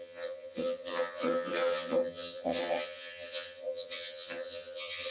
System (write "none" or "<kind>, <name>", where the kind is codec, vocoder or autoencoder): vocoder, HiFi-GAN